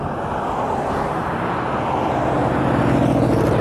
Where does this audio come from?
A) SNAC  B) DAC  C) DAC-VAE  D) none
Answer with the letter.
D